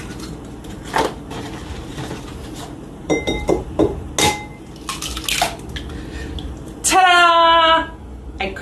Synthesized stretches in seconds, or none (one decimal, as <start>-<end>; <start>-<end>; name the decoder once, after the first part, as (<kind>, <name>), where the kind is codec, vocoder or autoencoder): 1.6-4.1 (vocoder, BigVGAN v2)